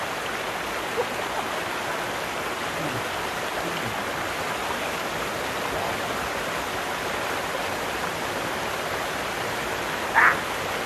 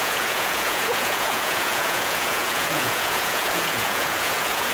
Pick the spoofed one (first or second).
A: second